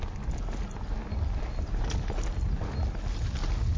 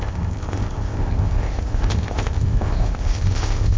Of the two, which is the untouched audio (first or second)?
first